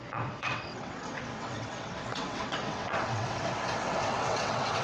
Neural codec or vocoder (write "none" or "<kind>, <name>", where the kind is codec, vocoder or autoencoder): vocoder, WaveNeXt